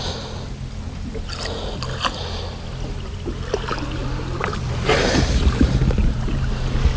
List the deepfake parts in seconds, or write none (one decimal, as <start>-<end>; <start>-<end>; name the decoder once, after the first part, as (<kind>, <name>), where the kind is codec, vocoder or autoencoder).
4.4-5.6 (vocoder, BigVGAN v2); 6.0-6.5